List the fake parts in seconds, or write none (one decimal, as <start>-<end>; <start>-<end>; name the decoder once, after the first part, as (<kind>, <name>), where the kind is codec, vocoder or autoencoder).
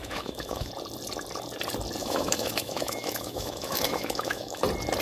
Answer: 0.0-0.7 (autoencoder, DAC-VAE); 2.0-4.6